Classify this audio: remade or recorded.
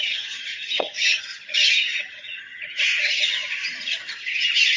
remade